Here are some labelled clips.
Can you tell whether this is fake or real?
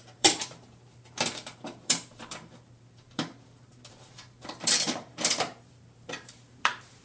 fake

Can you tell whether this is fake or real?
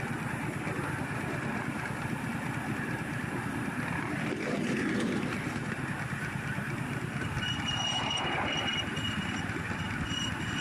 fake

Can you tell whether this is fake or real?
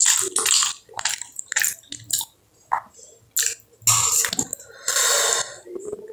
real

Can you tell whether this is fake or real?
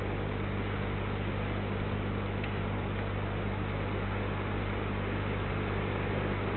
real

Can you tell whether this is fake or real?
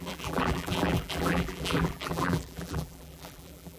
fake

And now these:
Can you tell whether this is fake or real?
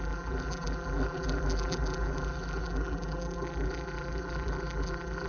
fake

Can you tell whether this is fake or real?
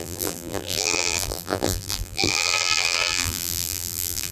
fake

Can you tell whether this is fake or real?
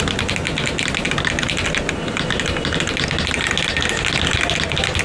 real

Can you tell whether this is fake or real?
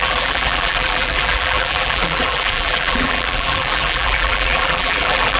fake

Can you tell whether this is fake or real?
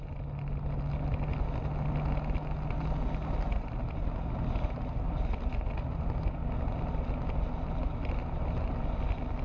real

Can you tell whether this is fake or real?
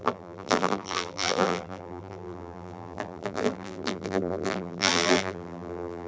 fake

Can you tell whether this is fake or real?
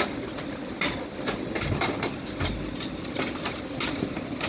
real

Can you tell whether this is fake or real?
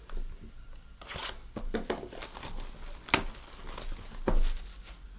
real